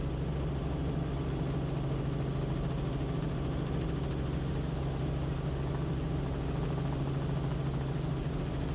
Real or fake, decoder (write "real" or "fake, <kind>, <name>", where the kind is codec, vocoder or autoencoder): real